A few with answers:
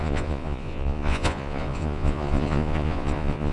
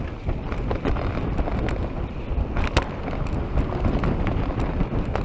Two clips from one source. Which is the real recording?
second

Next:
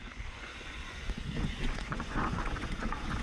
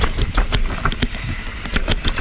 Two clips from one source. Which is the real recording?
second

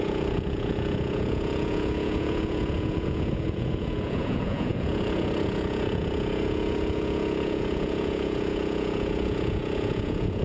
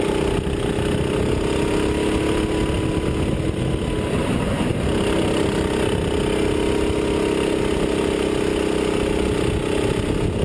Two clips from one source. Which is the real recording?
second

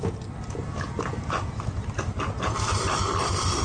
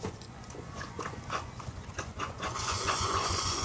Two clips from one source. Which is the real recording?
first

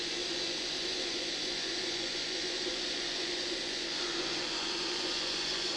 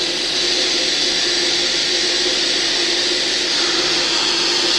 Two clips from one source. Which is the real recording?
second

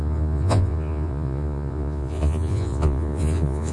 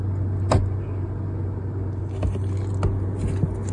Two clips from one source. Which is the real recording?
second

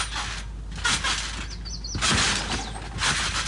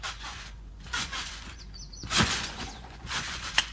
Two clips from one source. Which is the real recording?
first